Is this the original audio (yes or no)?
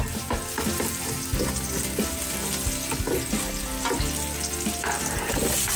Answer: yes